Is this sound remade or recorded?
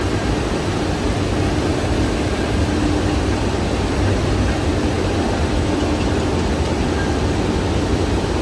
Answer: recorded